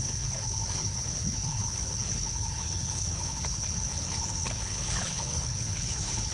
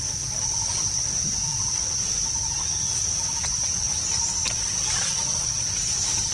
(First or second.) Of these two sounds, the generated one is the first